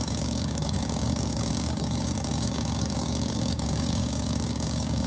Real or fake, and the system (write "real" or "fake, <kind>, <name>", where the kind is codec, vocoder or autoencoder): fake, codec, DAC